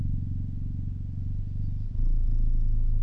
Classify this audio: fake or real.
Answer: real